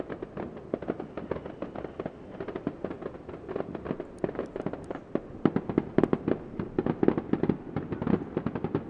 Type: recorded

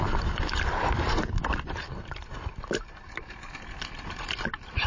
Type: recorded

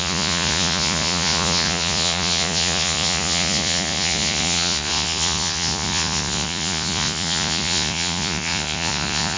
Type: remade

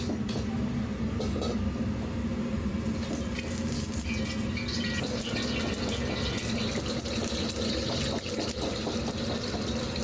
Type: recorded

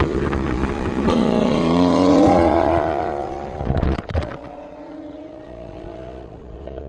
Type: remade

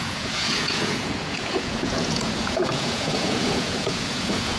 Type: remade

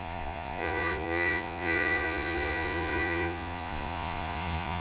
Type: remade